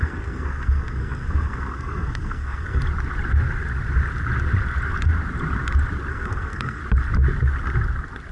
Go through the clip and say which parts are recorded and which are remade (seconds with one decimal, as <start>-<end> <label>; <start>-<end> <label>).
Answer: 0.0-2.8 remade; 2.8-6.1 recorded; 6.1-6.8 remade; 6.8-8.3 recorded